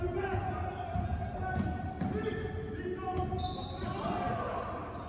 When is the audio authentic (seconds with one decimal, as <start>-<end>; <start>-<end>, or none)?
0.0-5.1